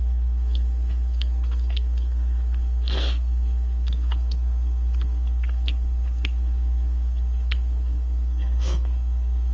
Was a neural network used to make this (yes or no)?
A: yes